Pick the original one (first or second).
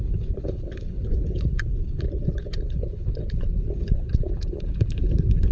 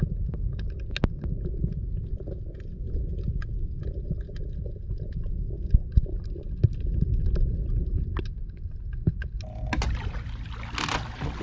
second